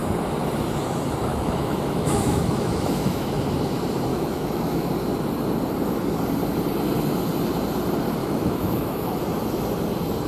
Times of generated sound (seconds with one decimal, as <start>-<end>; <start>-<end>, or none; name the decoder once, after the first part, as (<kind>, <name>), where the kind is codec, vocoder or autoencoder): 1.3-3.3 (autoencoder, DAC-VAE); 4.1-4.9; 8.2-9.2